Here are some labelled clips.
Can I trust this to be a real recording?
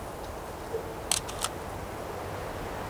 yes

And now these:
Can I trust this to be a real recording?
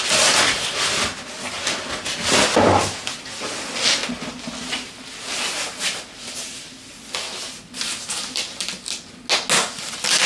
yes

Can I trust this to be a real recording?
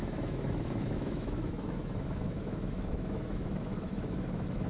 no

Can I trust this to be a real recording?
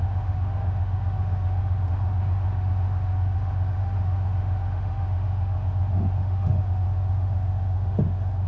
no